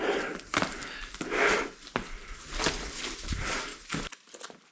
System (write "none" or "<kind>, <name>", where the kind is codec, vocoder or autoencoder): none